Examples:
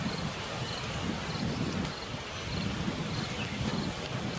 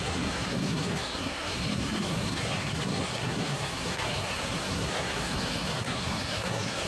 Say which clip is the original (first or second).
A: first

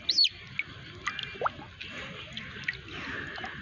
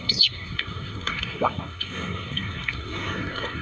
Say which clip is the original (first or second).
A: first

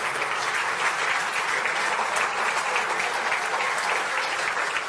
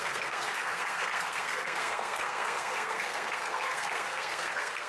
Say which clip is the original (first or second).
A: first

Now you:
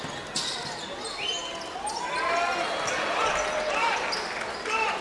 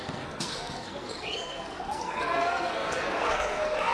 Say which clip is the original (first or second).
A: first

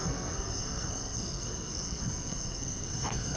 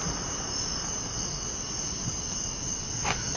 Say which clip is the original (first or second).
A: second